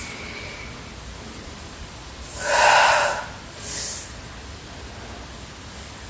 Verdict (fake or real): real